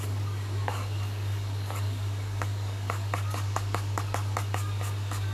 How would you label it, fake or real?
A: fake